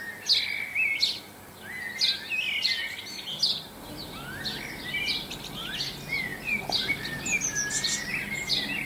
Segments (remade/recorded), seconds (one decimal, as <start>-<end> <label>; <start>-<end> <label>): 0.0-8.9 recorded